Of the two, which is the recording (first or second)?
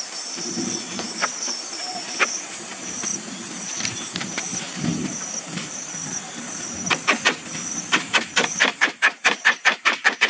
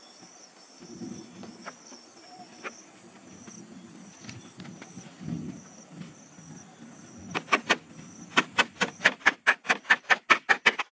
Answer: second